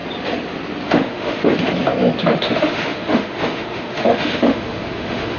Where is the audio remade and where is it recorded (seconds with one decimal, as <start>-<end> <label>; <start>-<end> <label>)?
0.0-0.9 recorded; 0.9-1.5 remade; 1.5-2.2 recorded; 2.2-5.4 remade